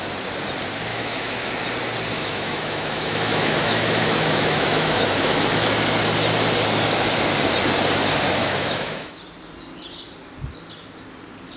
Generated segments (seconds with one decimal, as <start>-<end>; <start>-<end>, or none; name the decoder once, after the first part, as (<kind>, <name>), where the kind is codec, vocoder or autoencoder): 0.9-1.5 (autoencoder, DAC-VAE); 2.1-5.7; 8.4-9.2